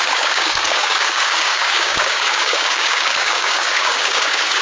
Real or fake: fake